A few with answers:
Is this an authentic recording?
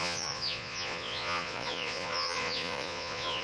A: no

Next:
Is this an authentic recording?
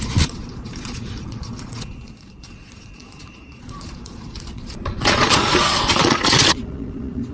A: no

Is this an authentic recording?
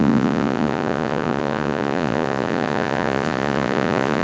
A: no